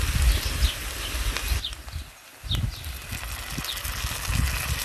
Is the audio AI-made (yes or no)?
no